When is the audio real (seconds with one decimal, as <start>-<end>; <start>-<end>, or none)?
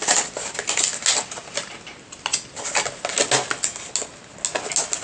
0.0-5.0